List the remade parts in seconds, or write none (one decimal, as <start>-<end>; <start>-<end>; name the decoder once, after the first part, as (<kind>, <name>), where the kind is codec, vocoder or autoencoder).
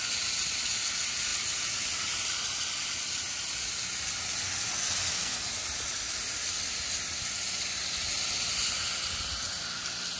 5.0-5.5 (codec, SNAC)